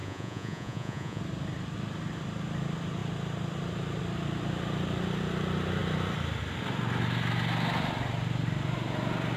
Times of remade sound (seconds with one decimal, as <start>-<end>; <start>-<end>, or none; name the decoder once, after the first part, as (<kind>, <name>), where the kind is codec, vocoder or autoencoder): 0.0-1.2 (vocoder, Vocos)